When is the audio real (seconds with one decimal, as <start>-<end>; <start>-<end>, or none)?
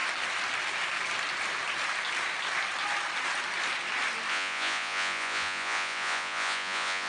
0.0-4.3